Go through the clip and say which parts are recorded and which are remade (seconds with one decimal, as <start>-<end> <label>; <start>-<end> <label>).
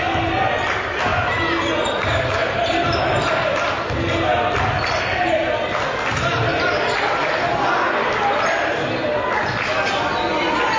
0.0-10.8 recorded